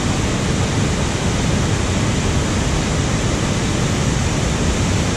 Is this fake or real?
real